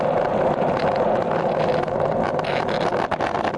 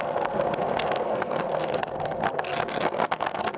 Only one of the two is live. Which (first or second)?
first